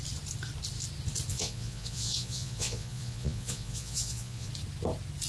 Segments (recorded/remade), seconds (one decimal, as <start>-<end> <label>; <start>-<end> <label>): 0.0-1.3 recorded; 1.3-4.5 remade; 4.5-5.3 recorded